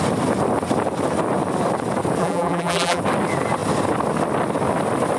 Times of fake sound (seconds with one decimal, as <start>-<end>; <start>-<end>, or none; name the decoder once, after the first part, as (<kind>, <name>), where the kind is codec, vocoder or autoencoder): 2.2-3.0 (vocoder, BigVGAN v2)